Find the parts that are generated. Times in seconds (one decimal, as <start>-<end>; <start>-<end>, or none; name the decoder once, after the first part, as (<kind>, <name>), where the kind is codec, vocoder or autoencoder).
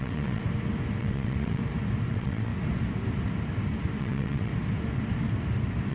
0.0-0.4 (vocoder, WaveNeXt); 1.0-1.6; 2.1-2.5; 4.0-4.5